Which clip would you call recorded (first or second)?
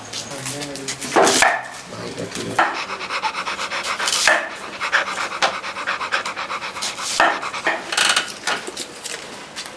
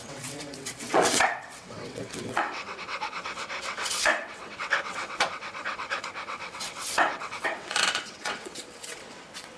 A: first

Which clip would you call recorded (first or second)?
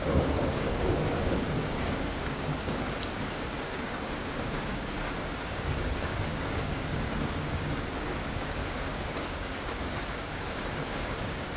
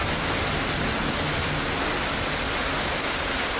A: second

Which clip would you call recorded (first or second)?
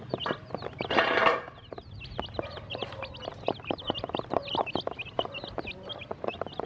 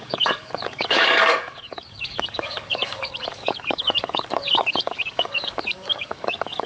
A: first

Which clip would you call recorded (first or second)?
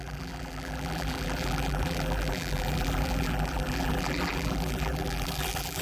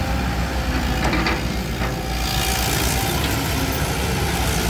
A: second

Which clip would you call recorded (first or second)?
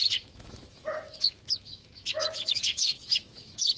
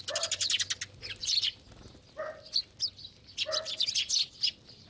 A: second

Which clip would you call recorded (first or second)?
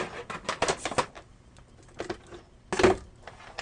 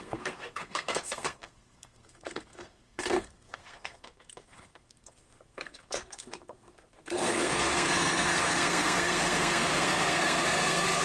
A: first